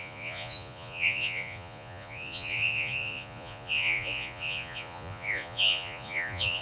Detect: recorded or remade remade